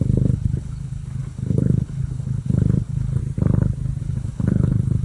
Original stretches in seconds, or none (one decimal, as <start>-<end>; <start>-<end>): 3.2-4.0